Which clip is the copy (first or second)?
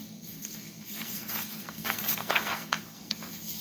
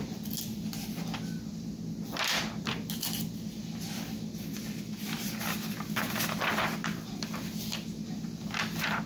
first